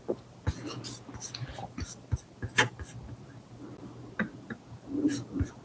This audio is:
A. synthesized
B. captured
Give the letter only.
B